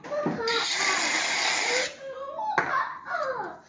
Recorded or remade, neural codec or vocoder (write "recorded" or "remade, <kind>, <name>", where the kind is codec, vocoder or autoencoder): recorded